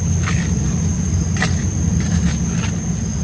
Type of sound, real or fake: real